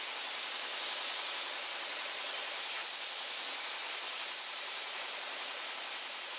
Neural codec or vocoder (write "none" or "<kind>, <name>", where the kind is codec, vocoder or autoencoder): none